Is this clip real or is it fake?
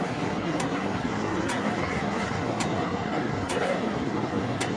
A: fake